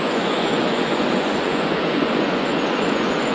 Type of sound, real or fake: fake